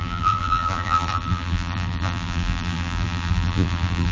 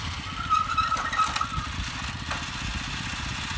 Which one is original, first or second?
second